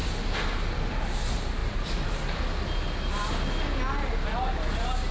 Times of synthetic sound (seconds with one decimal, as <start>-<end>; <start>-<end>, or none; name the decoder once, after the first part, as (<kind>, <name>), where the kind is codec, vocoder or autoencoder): none